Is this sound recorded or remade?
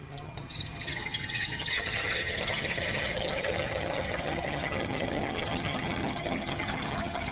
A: remade